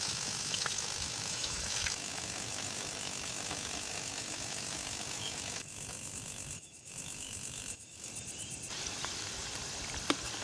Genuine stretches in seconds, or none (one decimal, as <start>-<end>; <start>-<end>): 8.1-10.4